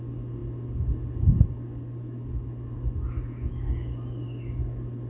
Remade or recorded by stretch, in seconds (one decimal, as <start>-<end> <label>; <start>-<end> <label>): 0.0-5.1 recorded